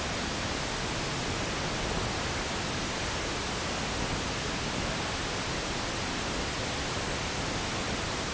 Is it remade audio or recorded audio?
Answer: recorded